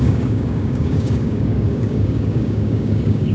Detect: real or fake fake